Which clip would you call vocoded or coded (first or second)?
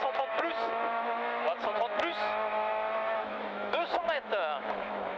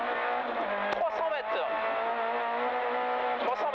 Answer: first